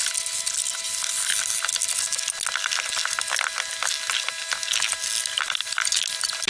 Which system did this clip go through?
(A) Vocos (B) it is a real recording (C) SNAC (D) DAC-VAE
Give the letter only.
B